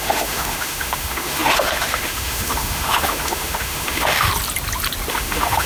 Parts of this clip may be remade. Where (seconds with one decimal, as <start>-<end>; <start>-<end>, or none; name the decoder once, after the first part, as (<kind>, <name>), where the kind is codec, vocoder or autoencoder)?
0.0-4.3 (autoencoder, DAC-VAE); 5.1-5.7